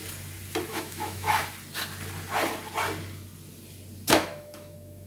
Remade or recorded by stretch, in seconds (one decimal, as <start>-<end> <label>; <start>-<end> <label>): 0.0-0.7 recorded; 0.7-1.4 remade; 1.4-4.2 recorded; 4.2-5.1 remade